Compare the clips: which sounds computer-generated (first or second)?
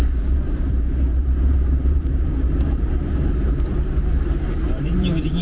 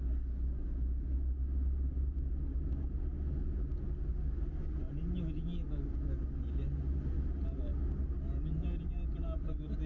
first